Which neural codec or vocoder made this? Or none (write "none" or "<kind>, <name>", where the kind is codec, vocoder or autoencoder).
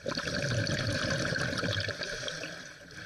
vocoder, BigVGAN v2